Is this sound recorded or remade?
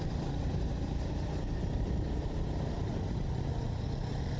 recorded